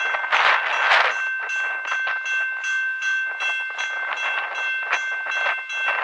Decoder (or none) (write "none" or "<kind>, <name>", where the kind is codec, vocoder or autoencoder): none